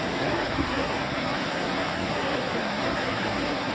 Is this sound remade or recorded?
remade